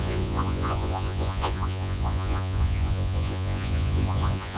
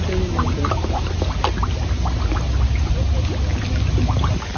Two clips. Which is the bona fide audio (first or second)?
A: second